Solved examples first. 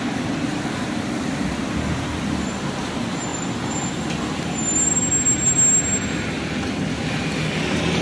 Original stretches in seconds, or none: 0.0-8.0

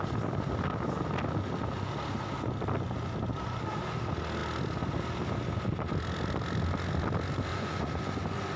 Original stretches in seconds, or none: 0.0-7.5; 8.1-8.6

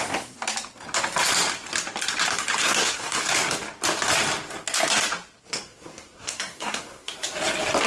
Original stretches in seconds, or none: 0.4-2.6; 3.2-5.4; 7.1-7.9

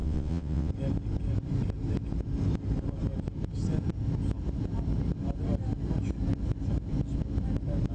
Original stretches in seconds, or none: 0.7-7.9

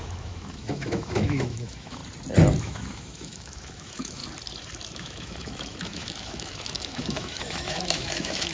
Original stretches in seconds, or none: 2.0-2.6; 4.2-4.9

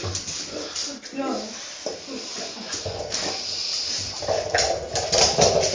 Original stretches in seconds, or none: 0.0-2.3; 3.0-5.7